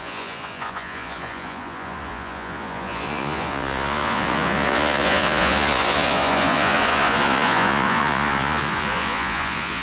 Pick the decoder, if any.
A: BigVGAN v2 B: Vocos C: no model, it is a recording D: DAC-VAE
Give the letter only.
B